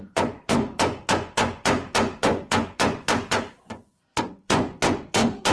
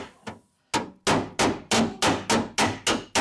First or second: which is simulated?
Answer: first